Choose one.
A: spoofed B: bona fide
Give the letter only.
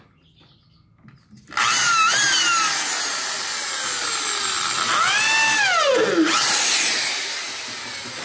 B